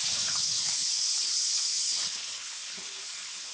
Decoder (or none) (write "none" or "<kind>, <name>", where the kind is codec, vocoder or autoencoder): codec, HILCodec